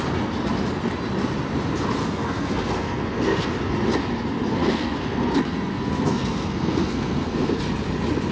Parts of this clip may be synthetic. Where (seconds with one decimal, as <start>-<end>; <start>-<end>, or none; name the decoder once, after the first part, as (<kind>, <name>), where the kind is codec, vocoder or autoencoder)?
2.0-3.5 (codec, SNAC); 4.5-7.6